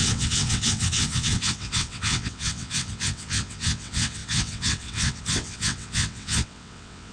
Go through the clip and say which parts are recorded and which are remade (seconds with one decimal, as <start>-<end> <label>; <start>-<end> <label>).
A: 0.0-7.1 remade